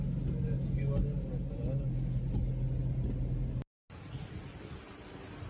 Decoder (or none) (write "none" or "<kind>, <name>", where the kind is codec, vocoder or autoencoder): none